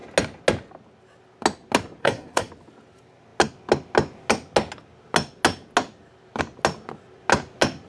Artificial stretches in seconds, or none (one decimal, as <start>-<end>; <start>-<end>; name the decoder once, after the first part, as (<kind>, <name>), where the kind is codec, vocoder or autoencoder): 2.0-2.5 (codec, SNAC)